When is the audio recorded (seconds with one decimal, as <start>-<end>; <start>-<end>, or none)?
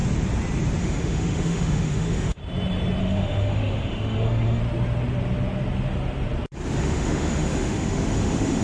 0.0-0.8; 2.4-3.0; 4.6-6.8